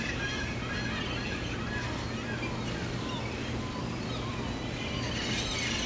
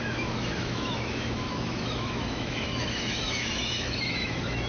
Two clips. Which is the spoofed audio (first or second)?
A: second